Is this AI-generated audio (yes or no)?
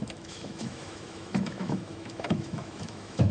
yes